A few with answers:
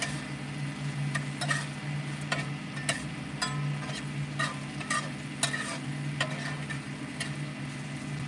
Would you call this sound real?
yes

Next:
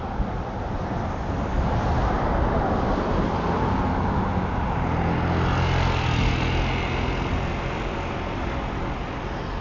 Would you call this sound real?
yes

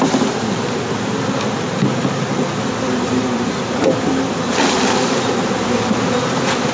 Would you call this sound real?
yes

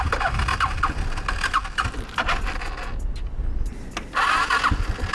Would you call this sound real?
yes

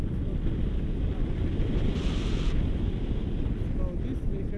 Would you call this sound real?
yes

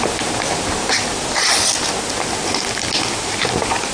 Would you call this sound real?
no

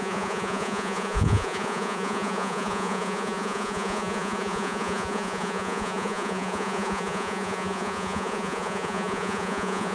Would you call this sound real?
no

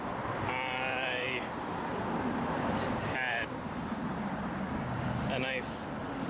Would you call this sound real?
no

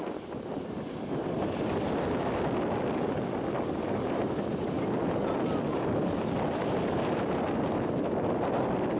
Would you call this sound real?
yes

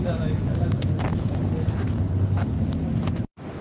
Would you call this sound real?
yes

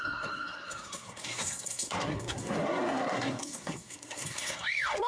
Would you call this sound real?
no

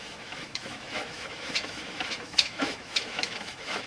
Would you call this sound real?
no